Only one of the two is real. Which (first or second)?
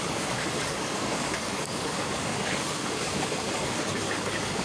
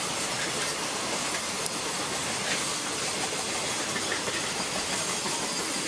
second